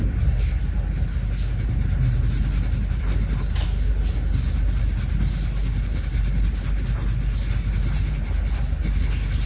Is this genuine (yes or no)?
yes